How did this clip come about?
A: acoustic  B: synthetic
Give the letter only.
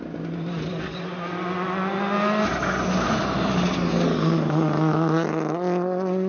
A